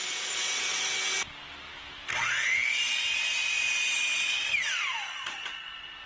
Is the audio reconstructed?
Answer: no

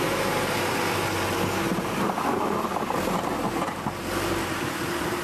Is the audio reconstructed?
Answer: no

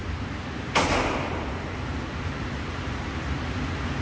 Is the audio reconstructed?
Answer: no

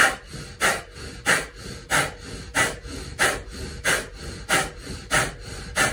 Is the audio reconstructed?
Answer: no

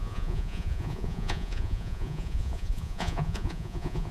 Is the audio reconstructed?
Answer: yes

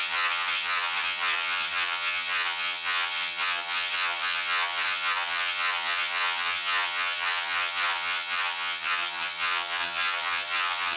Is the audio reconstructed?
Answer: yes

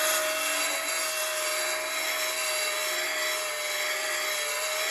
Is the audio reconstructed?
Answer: no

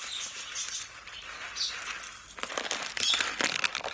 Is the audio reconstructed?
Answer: no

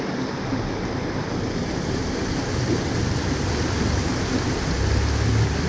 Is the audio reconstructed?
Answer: no